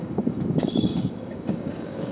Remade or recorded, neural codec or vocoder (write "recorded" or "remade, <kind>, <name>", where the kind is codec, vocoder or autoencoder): remade, codec, DAC